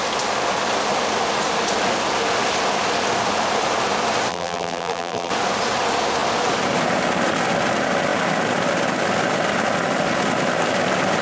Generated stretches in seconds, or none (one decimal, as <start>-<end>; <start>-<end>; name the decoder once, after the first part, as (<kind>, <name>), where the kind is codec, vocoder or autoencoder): 4.3-5.3 (vocoder, BigVGAN v2)